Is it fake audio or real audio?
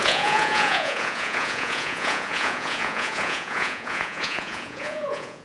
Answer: fake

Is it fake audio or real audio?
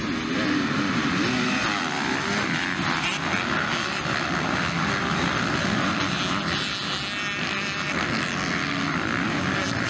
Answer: real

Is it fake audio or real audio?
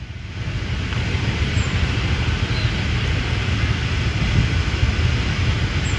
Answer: real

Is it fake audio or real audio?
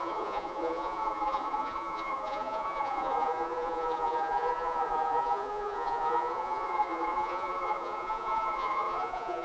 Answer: fake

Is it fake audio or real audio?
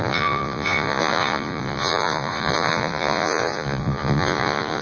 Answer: fake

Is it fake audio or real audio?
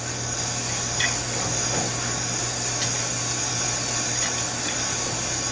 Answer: real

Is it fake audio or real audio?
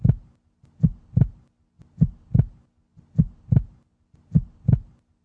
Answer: real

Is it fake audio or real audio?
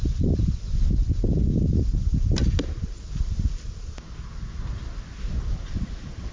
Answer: real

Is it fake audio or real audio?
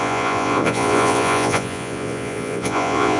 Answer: fake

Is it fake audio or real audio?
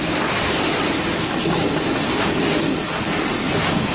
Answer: real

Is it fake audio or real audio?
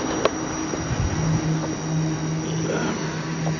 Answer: real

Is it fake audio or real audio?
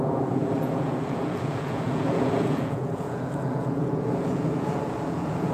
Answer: fake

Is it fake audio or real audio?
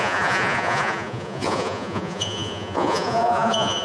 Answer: fake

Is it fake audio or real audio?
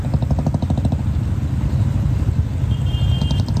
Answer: real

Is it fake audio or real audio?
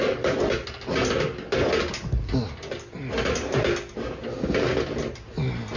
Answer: real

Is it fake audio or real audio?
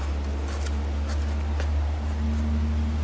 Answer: real